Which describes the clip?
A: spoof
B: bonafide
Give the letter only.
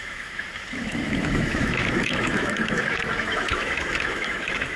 A